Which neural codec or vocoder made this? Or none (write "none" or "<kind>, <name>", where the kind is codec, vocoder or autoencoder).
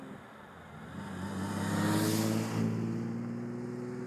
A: none